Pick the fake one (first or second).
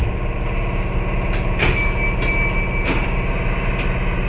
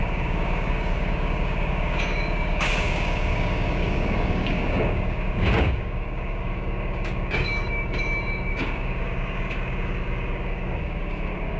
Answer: second